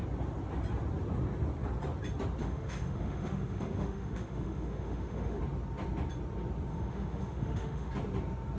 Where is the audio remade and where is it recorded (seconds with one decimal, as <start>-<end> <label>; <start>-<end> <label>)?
0.0-2.4 recorded; 2.4-5.4 remade; 5.4-6.7 recorded; 6.7-7.9 remade; 7.9-8.6 recorded